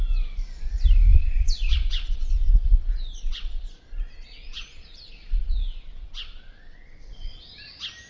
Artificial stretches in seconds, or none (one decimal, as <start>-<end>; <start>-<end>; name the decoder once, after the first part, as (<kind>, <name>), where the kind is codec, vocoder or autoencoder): 1.1-2.5 (vocoder, Vocos); 3.1-7.1

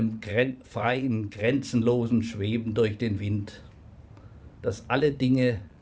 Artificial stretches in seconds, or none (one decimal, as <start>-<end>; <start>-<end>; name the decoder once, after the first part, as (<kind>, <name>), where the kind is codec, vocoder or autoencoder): 0.0-1.4 (vocoder, Vocos); 4.9-5.8

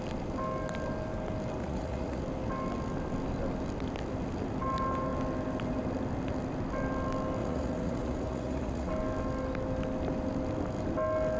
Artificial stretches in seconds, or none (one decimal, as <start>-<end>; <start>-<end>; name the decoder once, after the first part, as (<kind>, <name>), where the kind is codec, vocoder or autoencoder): 1.6-2.2 (vocoder, Vocos); 7.4-8.9

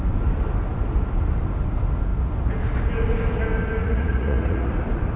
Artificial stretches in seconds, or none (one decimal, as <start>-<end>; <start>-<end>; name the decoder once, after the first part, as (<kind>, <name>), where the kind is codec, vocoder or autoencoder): 3.8-4.7 (vocoder, Vocos)

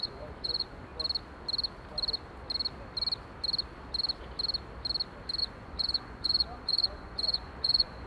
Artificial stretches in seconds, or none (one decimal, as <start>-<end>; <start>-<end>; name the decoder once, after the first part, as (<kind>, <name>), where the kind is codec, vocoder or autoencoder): 0.0-0.9 (vocoder, Vocos); 5.4-8.1